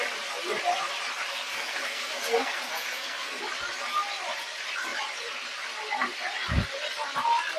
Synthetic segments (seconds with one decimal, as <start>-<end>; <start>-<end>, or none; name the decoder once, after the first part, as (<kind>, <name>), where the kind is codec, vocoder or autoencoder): 1.3-3.4 (codec, SNAC)